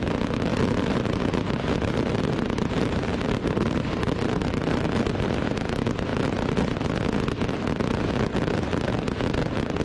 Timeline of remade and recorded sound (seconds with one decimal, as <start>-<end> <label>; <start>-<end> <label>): 0.0-0.5 recorded; 0.5-4.8 remade; 4.8-9.8 recorded